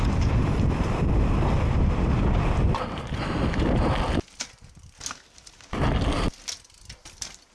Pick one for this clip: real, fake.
real